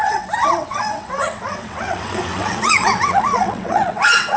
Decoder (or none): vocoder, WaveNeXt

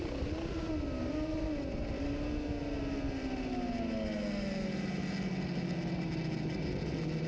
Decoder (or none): none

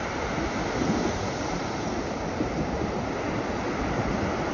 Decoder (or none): none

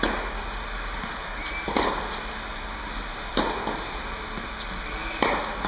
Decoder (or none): none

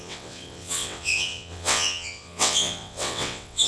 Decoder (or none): vocoder, WaveNeXt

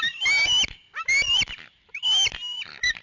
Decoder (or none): none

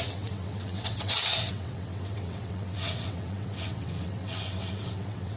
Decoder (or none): vocoder, WaveNeXt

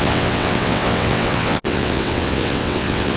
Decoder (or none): vocoder, WaveNeXt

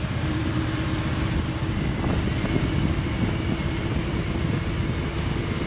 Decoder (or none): none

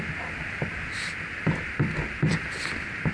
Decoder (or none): none